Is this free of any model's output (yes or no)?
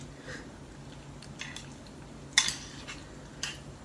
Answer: yes